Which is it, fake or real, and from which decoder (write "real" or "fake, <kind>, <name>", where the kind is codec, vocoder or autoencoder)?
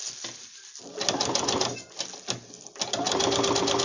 real